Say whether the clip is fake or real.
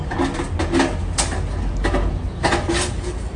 real